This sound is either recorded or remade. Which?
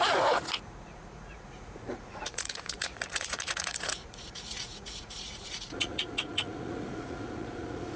remade